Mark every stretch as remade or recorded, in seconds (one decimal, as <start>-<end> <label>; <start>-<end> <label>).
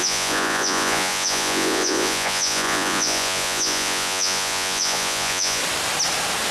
0.0-5.6 remade; 5.6-6.5 recorded